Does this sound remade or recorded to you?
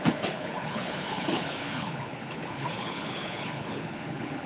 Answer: remade